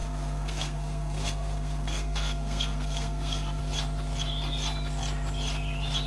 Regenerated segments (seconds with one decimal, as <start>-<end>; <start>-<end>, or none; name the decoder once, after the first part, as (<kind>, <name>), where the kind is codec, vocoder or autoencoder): 0.0-3.6 (codec, SNAC)